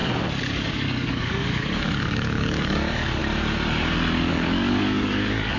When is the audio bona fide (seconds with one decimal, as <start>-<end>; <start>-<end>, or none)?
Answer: 0.0-0.7; 3.2-4.3